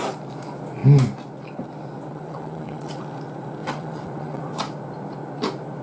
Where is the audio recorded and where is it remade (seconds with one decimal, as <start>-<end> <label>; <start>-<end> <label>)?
0.0-2.1 recorded; 2.1-3.0 remade; 3.0-3.6 recorded; 3.6-4.6 remade; 4.6-5.8 recorded